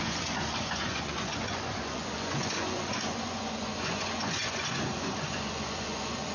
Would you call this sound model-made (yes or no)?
yes